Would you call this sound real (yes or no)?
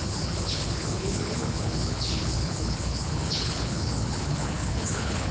no